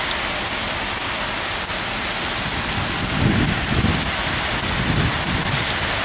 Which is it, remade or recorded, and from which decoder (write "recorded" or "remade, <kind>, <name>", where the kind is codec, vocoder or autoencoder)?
recorded